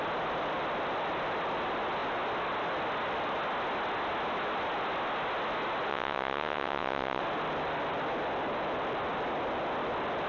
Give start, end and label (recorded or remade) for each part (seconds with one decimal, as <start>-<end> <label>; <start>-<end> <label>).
0.0-5.9 recorded; 5.9-7.2 remade; 7.2-10.3 recorded